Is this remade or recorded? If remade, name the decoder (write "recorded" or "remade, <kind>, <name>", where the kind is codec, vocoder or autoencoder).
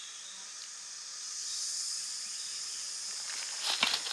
recorded